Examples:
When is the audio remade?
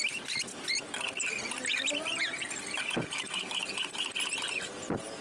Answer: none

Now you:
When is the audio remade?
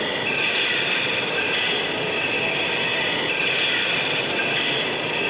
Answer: none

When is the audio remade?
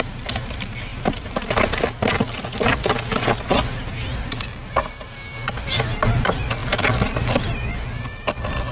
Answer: none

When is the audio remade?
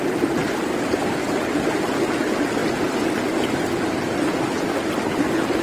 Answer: none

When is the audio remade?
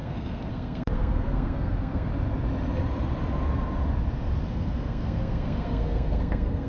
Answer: 0.0-2.1 (codec, SNAC); 4.5-6.7